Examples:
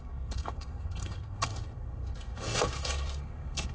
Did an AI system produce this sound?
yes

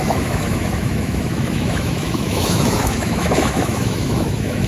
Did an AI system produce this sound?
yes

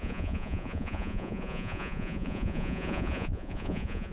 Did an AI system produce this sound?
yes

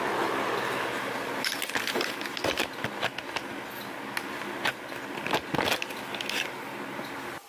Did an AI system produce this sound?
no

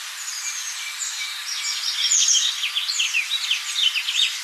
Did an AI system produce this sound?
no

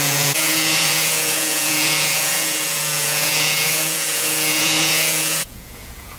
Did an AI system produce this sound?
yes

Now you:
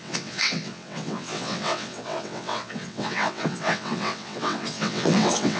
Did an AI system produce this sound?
yes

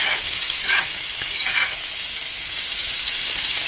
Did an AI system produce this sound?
yes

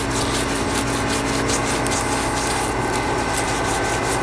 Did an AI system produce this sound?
no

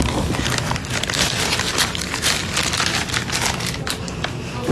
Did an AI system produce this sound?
no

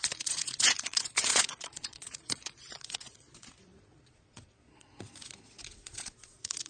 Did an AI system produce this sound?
yes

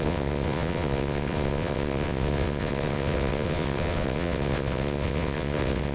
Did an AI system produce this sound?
yes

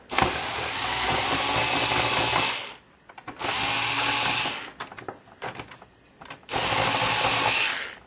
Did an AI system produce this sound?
no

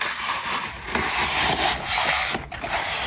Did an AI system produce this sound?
no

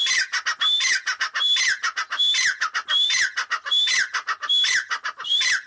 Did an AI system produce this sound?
no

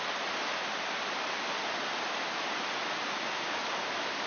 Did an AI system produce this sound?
no